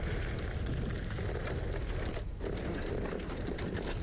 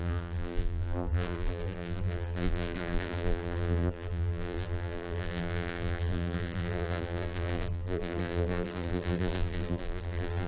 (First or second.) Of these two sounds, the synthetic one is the second